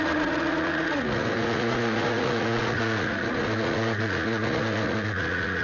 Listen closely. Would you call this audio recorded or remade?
remade